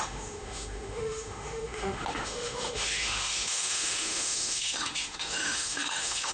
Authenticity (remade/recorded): remade